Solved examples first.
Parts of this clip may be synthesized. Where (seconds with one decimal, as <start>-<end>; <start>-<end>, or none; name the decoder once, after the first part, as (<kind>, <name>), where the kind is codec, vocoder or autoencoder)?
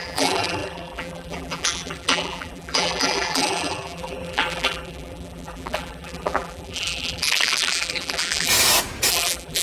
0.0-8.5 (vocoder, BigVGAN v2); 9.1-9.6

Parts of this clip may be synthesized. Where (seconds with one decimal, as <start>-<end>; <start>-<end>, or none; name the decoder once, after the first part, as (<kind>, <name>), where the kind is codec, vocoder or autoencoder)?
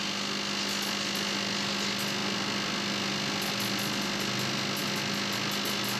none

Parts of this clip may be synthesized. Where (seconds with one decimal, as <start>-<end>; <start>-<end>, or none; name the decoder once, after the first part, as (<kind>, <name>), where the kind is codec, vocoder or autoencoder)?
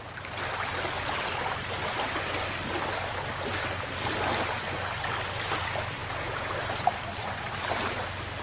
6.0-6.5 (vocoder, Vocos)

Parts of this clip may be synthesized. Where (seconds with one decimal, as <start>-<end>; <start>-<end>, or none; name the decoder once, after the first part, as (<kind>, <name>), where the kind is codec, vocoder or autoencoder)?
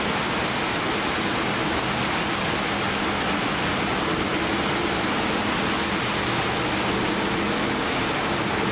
none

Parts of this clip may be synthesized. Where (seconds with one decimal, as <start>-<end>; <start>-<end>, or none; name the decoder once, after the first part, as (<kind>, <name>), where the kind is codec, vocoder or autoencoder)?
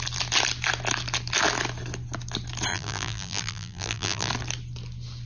2.7-4.3 (vocoder, BigVGAN v2)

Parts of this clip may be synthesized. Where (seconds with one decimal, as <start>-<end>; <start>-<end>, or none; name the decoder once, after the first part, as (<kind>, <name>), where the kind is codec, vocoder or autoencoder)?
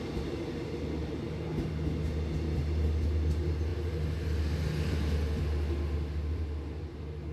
1.0-1.6 (vocoder, BigVGAN v2)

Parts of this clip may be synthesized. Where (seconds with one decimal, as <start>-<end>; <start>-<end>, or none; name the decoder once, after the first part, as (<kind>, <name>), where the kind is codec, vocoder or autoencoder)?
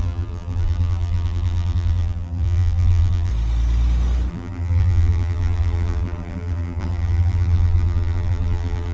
0.0-3.3 (vocoder, BigVGAN v2); 4.3-8.9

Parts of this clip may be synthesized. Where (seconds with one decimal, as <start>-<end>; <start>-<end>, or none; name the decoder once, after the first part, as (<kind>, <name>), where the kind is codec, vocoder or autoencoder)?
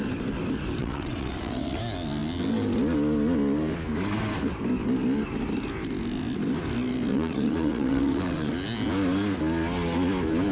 0.8-1.8 (vocoder, WaveNeXt); 7.1-8.5